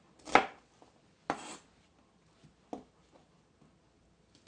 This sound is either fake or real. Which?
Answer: real